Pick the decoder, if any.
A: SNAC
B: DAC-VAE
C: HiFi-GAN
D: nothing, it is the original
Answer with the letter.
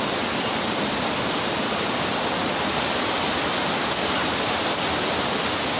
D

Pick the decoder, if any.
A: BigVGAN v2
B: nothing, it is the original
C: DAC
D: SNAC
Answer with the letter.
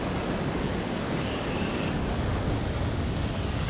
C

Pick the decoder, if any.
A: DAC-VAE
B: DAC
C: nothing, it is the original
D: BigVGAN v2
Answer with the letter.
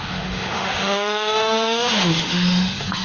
A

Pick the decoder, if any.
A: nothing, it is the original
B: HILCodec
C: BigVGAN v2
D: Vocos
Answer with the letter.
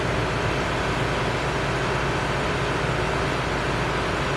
A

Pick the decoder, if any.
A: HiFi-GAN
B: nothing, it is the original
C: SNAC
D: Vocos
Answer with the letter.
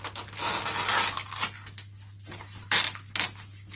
B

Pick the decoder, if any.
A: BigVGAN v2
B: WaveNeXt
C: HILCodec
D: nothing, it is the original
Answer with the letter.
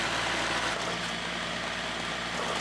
D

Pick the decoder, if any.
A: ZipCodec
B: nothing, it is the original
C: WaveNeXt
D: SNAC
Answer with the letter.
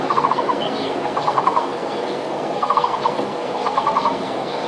D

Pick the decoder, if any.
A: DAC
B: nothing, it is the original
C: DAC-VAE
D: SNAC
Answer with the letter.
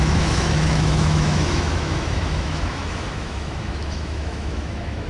C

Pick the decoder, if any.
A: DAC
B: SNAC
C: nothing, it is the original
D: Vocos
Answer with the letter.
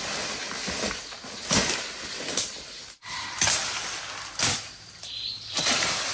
C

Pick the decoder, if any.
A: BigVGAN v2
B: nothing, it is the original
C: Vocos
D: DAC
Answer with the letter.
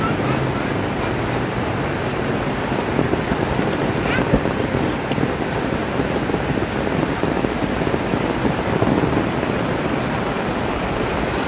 B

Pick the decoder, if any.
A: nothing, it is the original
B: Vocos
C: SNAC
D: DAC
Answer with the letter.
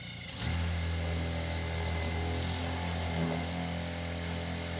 A